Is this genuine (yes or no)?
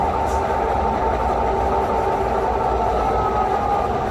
yes